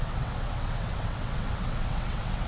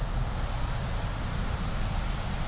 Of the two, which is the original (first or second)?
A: second